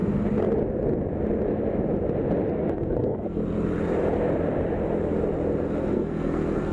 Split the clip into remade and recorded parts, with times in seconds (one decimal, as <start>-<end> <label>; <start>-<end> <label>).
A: 0.0-2.5 recorded; 2.5-3.4 remade; 3.4-5.9 recorded; 5.9-6.7 remade